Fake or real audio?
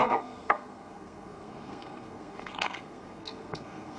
fake